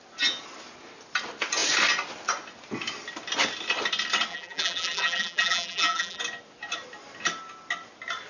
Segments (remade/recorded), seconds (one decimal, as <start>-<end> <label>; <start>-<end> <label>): 0.0-4.3 recorded; 4.3-6.2 remade; 6.2-8.3 recorded

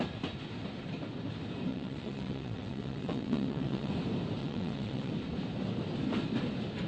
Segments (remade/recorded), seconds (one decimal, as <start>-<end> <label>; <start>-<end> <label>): 0.0-1.7 recorded; 1.7-3.9 remade; 3.9-4.4 recorded; 4.4-5.1 remade; 5.1-6.9 recorded

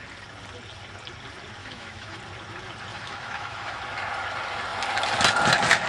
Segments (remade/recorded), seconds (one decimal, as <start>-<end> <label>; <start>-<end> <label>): 0.0-1.6 recorded; 1.6-2.2 remade; 2.2-2.9 recorded; 2.9-3.8 remade; 3.8-5.9 recorded

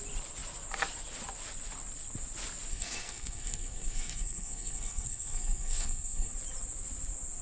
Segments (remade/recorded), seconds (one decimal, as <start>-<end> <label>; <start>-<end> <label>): 0.0-2.7 recorded; 2.7-6.3 remade; 6.3-7.4 recorded

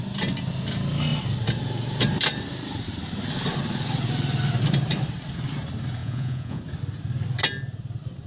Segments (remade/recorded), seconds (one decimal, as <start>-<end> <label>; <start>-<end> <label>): 0.0-6.0 recorded; 6.0-6.6 remade; 6.6-8.3 recorded

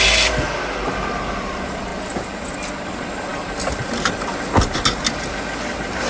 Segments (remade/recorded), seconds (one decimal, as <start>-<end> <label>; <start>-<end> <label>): 0.0-3.3 recorded; 3.3-3.9 remade; 3.9-6.1 recorded

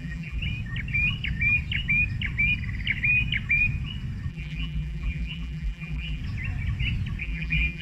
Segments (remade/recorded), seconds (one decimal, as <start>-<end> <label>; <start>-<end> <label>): 0.0-0.4 remade; 0.4-4.3 recorded; 4.3-6.2 remade; 6.2-7.2 recorded; 7.2-7.8 remade